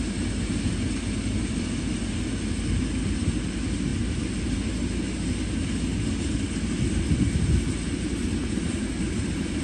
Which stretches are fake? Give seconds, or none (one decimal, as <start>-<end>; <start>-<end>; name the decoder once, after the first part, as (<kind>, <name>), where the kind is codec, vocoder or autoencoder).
none